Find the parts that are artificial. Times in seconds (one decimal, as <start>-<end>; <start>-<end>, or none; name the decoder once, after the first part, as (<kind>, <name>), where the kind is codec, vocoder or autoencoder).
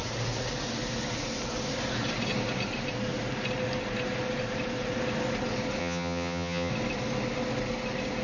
5.8-6.7 (vocoder, HiFi-GAN)